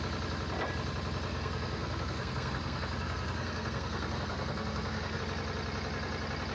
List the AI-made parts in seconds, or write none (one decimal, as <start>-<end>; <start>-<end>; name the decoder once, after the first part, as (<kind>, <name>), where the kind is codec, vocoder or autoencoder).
1.3-5.2 (codec, SNAC)